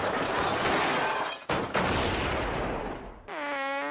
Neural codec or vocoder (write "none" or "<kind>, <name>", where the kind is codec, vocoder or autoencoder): none